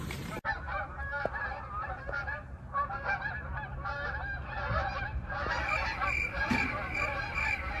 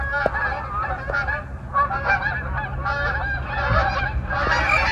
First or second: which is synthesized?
first